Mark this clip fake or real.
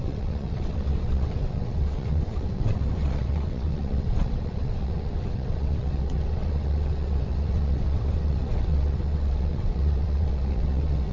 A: fake